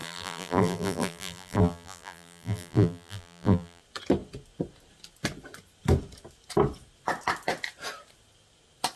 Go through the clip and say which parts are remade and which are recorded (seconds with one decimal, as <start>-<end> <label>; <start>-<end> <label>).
0.0-3.8 remade; 3.8-9.0 recorded